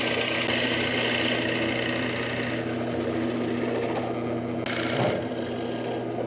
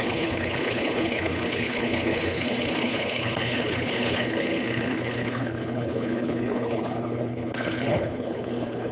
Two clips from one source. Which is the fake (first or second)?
second